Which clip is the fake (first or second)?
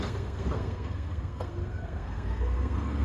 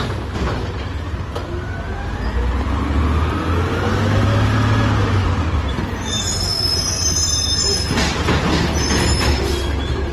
first